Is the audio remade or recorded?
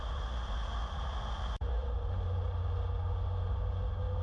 recorded